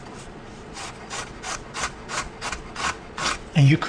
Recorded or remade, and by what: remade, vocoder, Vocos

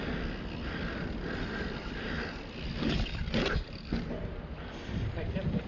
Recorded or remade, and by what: recorded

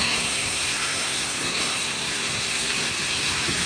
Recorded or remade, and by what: remade, codec, SNAC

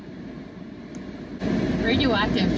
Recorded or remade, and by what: recorded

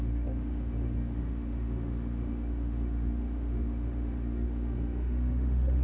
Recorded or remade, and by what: remade, autoencoder, DAC-VAE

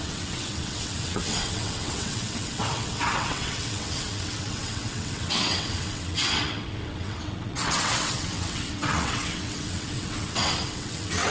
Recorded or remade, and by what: remade, vocoder, WaveNeXt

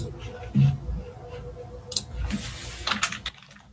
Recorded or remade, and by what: recorded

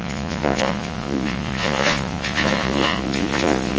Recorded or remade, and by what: remade, vocoder, Vocos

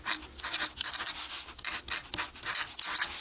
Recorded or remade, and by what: recorded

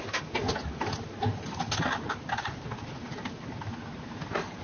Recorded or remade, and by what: recorded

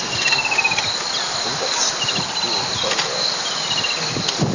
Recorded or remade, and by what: recorded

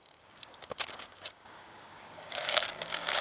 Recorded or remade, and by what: remade, codec, DAC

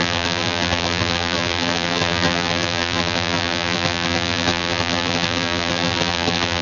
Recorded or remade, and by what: remade, vocoder, BigVGAN v2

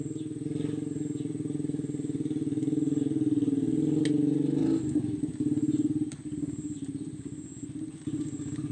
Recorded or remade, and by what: recorded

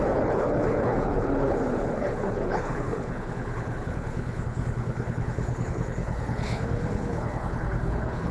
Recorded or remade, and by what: remade, codec, HILCodec